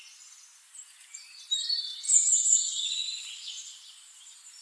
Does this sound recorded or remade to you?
remade